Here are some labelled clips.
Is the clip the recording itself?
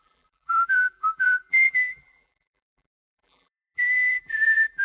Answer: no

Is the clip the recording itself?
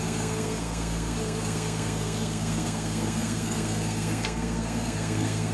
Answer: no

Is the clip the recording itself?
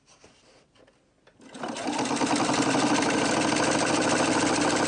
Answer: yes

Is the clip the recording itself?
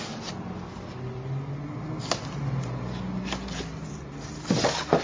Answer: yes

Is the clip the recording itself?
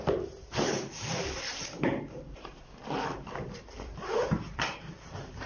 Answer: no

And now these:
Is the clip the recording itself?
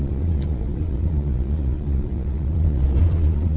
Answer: no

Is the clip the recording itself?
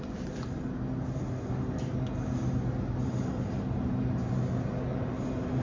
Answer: yes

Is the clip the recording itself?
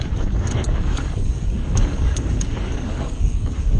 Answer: no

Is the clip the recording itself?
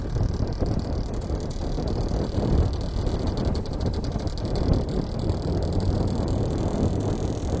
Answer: yes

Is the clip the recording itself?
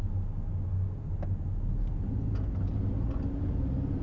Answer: yes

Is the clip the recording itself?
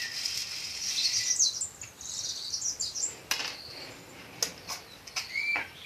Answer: yes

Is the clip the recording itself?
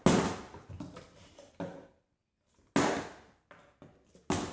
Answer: yes